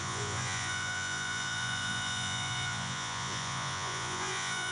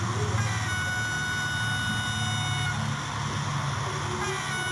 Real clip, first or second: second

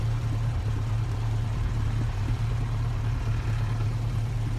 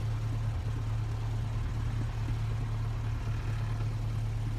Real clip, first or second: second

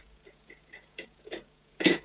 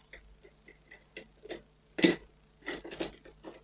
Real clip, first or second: second